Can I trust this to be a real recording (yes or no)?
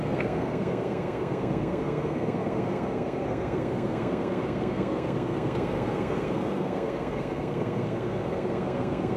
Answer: no